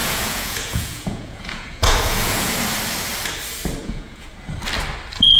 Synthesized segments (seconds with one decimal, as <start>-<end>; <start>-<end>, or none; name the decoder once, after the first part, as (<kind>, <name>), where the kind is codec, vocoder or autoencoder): 0.0-2.5 (vocoder, Vocos); 3.8-4.3